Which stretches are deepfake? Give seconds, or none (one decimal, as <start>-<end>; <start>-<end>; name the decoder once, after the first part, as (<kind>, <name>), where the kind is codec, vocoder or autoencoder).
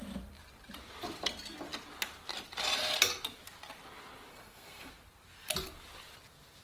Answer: 4.3-4.9 (codec, SNAC)